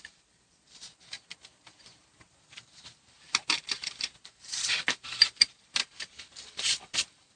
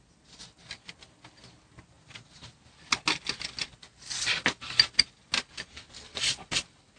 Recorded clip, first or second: second